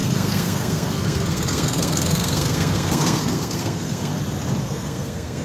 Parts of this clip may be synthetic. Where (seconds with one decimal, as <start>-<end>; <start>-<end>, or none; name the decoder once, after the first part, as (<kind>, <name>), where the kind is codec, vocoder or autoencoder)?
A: 0.0-4.1 (codec, SNAC); 4.6-5.4